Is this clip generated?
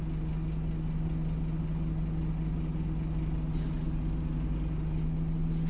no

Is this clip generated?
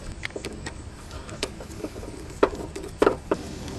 yes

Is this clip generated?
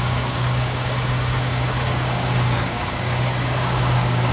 yes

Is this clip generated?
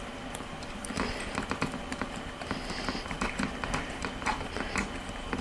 no